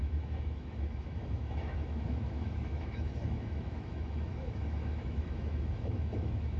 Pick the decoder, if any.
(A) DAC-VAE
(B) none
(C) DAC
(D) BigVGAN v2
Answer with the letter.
A